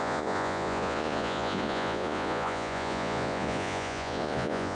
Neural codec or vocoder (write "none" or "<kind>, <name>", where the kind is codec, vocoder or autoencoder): vocoder, Vocos